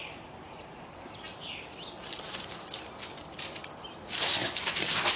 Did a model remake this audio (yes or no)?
no